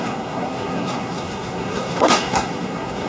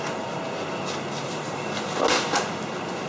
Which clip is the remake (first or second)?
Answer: first